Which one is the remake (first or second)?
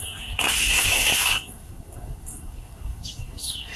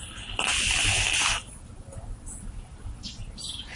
first